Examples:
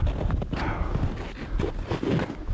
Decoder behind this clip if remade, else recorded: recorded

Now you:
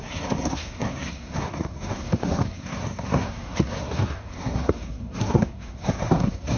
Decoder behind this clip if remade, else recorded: remade, codec, SNAC